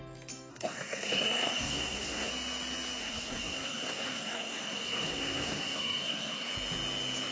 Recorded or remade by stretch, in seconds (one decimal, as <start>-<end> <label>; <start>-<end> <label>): 0.0-0.5 recorded; 0.5-2.3 remade; 2.3-3.0 recorded; 3.0-6.5 remade; 6.5-7.3 recorded